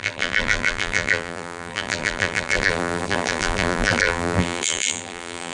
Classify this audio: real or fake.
fake